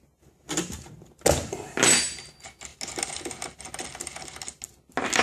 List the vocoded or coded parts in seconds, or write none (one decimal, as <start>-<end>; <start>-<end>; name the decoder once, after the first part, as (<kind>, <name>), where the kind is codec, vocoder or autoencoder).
none